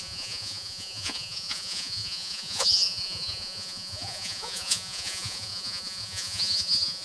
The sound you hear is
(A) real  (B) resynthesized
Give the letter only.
B